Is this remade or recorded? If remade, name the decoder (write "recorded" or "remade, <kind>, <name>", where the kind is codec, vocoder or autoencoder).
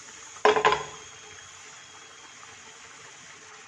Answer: recorded